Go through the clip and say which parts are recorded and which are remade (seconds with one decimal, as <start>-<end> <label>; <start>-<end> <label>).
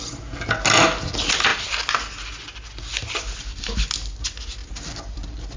0.0-5.6 recorded